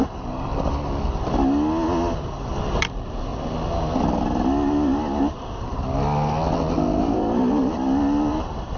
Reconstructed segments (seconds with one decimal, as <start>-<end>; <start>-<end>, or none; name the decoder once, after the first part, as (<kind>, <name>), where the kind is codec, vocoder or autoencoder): 0.0-0.5 (vocoder, BigVGAN v2); 2.6-3.3; 7.0-7.6; 8.3-8.8